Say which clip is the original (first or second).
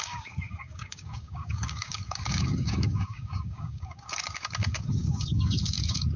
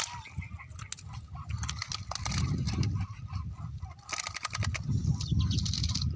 second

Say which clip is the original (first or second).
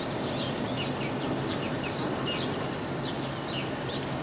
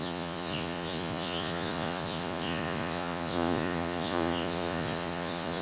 first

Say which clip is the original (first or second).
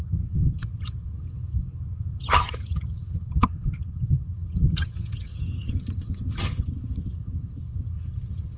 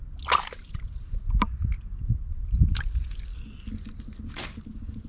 second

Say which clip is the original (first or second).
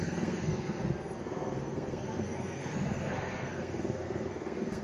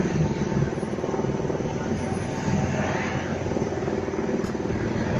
second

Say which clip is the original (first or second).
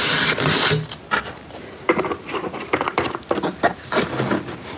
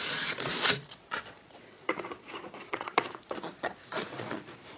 first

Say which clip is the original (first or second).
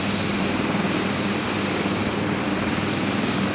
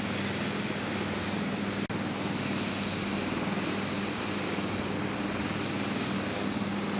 second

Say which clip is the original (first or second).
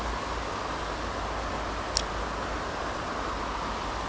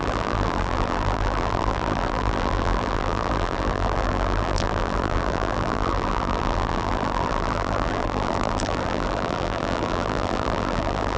first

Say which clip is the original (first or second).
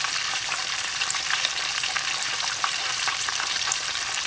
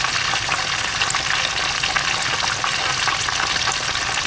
second